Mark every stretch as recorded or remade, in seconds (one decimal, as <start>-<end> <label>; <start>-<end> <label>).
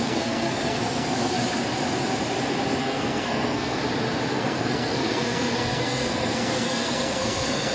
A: 0.0-1.4 remade; 1.4-2.8 recorded; 2.8-3.8 remade; 3.8-4.3 recorded; 4.3-7.7 remade